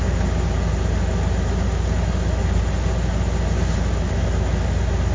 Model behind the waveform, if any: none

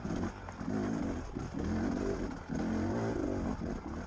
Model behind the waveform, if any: none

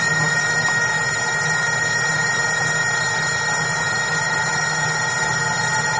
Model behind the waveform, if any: none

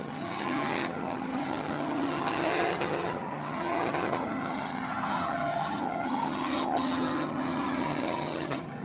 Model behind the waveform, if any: vocoder, HiFi-GAN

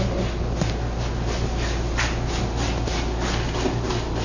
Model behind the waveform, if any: none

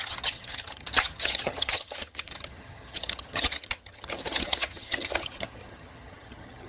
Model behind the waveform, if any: vocoder, HiFi-GAN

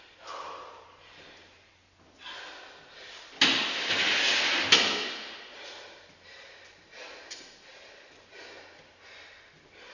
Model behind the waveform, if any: none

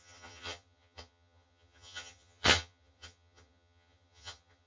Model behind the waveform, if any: vocoder, HiFi-GAN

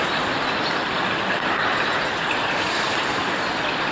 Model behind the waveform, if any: none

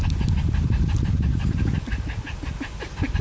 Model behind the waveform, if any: none